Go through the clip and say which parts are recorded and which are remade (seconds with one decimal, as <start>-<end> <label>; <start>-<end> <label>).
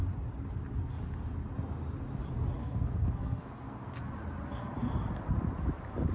0.0-2.6 recorded; 2.6-3.9 remade; 3.9-6.1 recorded